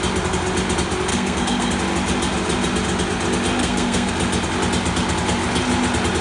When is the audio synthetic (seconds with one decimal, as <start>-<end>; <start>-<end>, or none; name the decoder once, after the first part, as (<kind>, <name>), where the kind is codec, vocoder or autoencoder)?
1.1-1.7 (codec, SNAC); 3.6-4.1